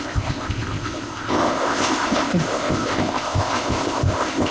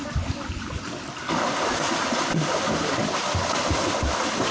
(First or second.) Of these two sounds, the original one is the second